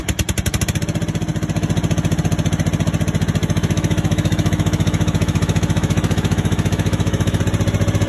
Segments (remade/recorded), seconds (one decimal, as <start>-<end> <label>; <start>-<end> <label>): 0.0-3.4 recorded; 3.4-7.4 remade; 7.4-8.1 recorded